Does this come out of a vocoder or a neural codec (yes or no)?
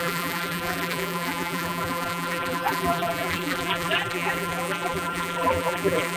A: yes